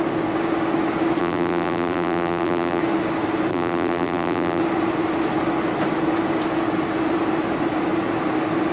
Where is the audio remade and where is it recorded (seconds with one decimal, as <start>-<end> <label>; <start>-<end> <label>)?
0.0-1.2 recorded; 1.2-2.8 remade; 2.8-3.5 recorded; 3.5-4.6 remade; 4.6-8.7 recorded